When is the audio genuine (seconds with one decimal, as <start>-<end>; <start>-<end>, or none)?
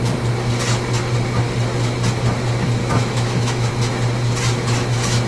0.0-2.8; 3.7-5.3